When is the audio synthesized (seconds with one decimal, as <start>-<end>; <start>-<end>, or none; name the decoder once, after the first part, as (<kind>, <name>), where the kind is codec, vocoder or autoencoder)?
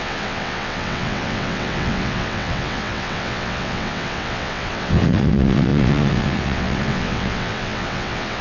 0.0-8.4 (vocoder, WaveNeXt)